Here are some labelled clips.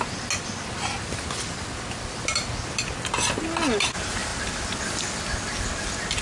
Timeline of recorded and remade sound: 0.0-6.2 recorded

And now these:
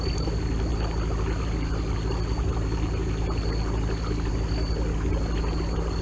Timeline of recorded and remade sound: 0.0-6.0 recorded

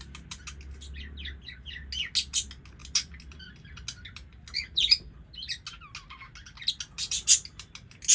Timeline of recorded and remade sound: 0.0-8.1 recorded

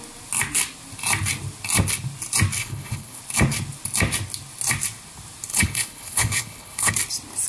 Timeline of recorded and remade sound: 0.0-2.6 recorded; 2.6-3.2 remade; 3.2-5.5 recorded; 5.5-6.9 remade; 6.9-7.5 recorded

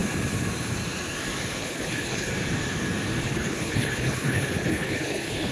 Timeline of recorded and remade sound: 0.0-1.6 recorded; 1.6-2.3 remade; 2.3-3.2 recorded; 3.2-5.5 remade

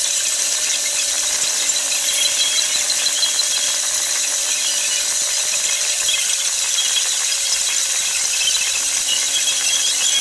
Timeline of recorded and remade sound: 0.0-10.2 recorded

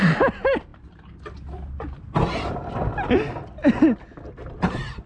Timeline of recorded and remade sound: 0.0-5.1 recorded